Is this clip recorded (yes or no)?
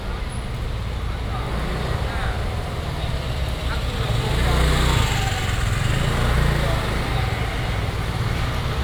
yes